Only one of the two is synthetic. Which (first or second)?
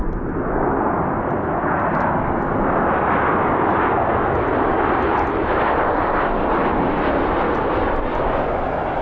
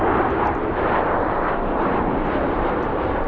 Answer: second